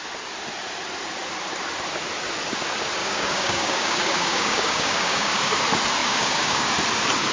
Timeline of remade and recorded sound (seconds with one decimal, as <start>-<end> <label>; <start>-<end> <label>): 0.0-3.0 recorded; 3.0-5.6 remade; 5.6-6.0 recorded; 6.0-6.7 remade; 6.7-7.3 recorded

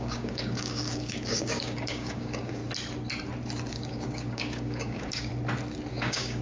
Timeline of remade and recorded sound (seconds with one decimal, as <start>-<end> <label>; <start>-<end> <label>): 0.0-2.6 remade; 2.6-3.7 recorded; 3.7-5.3 remade; 5.3-5.9 recorded; 5.9-6.4 remade

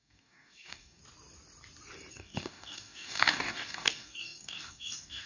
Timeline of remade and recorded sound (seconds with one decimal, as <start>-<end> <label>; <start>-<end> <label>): 0.0-1.0 remade; 1.0-2.1 recorded; 2.1-5.3 remade

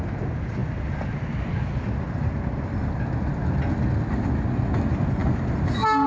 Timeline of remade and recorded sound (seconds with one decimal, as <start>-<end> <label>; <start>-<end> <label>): 0.0-6.1 recorded

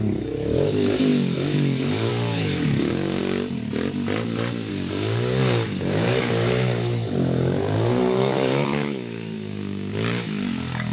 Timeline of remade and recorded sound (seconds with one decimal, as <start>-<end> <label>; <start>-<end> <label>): 0.0-3.2 remade; 3.2-4.7 recorded; 4.7-10.9 remade

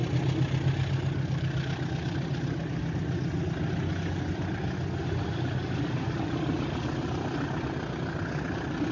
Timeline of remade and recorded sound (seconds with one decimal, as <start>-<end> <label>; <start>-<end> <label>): 0.0-8.9 recorded

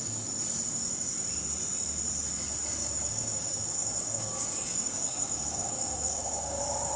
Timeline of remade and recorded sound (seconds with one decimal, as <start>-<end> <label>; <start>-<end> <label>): 0.0-2.8 recorded; 2.8-6.6 remade; 6.6-7.0 recorded

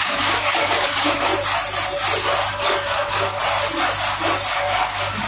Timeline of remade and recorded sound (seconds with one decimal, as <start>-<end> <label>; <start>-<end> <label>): 0.0-1.3 remade; 1.3-2.5 recorded; 2.5-3.4 remade; 3.4-4.5 recorded; 4.5-5.3 remade